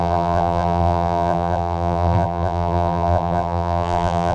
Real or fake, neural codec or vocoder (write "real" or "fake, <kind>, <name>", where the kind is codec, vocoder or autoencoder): fake, vocoder, BigVGAN v2